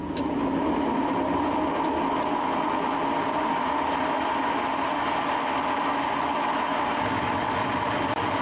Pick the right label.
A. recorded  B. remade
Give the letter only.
A